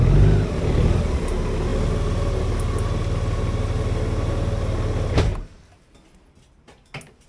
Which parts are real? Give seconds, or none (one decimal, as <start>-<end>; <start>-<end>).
0.0-7.3